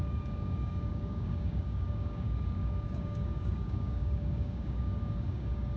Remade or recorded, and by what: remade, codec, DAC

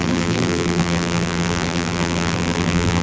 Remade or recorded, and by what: remade, vocoder, BigVGAN v2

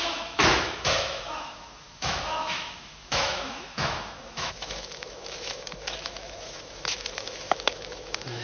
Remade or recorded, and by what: remade, autoencoder, DAC-VAE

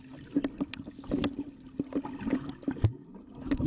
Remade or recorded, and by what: recorded